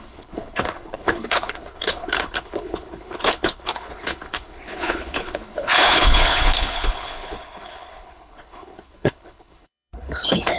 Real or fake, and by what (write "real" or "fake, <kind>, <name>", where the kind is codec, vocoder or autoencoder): fake, codec, HILCodec